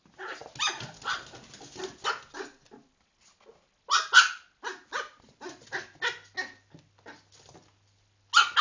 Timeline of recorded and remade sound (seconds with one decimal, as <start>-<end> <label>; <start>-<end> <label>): 0.0-8.6 recorded